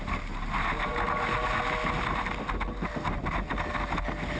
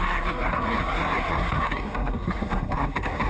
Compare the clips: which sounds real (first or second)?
first